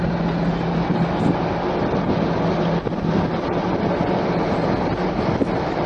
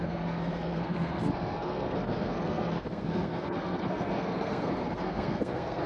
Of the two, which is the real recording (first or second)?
first